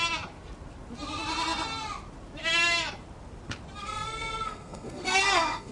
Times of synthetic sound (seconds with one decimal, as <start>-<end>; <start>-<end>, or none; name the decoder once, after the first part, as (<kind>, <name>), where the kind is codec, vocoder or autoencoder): 3.8-5.7 (codec, SNAC)